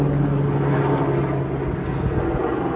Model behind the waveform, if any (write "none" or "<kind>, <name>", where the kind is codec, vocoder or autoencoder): none